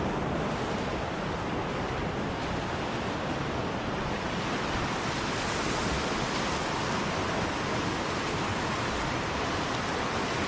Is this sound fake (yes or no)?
no